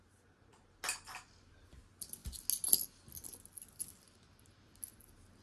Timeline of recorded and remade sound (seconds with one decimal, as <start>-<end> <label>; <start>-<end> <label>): 0.0-5.4 recorded